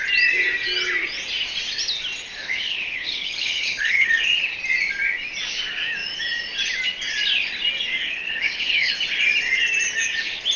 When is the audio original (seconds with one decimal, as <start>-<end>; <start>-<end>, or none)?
0.0-2.4; 4.1-8.0; 8.9-10.6